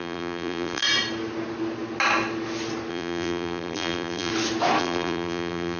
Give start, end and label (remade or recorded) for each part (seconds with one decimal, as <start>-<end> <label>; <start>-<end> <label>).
0.0-0.8 remade; 0.8-2.9 recorded; 2.9-4.3 remade; 4.3-4.8 recorded; 4.8-5.8 remade